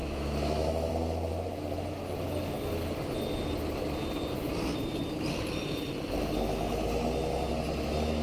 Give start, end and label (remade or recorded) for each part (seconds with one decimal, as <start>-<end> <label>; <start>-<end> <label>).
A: 0.0-0.9 remade; 0.9-8.2 recorded